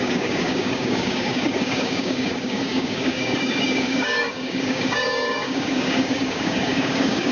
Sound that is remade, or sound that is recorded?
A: remade